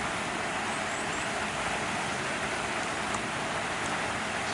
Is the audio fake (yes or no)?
no